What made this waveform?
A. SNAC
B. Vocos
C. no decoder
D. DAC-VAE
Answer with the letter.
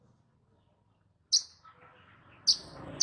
C